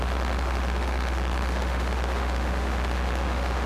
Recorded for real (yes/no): no